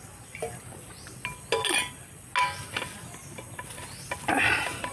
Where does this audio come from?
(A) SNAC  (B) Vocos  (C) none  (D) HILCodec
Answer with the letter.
C